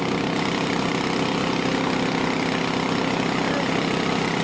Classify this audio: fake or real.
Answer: real